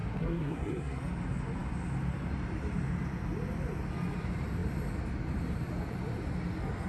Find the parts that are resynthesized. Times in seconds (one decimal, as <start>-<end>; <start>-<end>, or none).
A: 0.0-1.0